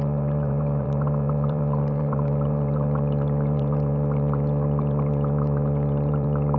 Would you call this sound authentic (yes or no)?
no